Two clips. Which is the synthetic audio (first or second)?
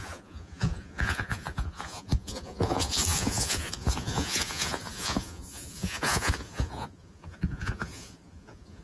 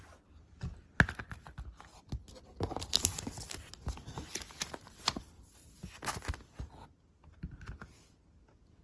first